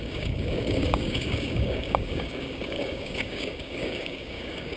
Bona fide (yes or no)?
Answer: no